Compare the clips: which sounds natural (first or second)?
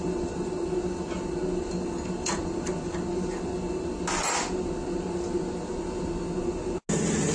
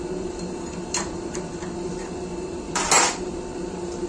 first